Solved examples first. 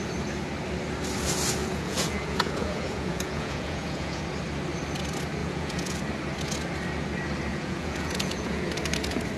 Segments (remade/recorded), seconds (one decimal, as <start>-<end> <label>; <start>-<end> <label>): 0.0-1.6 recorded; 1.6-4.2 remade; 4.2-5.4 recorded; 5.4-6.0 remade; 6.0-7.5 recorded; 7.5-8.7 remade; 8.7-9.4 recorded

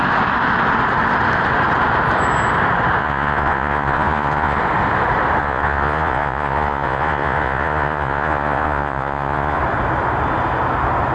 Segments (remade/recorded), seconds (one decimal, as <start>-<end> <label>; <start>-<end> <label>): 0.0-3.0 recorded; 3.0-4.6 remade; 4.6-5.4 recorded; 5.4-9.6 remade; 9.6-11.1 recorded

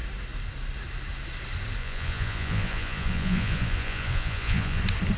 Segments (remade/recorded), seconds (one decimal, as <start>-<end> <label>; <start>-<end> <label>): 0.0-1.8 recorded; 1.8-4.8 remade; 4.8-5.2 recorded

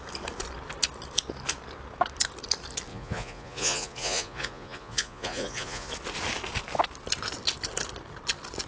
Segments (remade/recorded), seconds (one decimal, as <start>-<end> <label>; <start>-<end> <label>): 0.0-2.9 recorded; 2.9-5.9 remade; 5.9-8.7 recorded